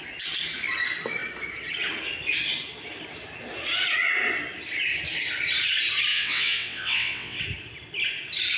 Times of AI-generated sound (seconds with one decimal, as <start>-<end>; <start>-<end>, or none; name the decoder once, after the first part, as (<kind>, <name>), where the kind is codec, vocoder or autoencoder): 6.1-7.4 (vocoder, WaveNeXt)